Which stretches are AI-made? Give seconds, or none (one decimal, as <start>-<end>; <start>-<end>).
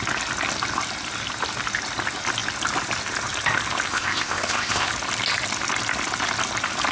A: 3.9-4.9